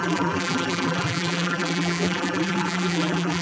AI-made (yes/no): yes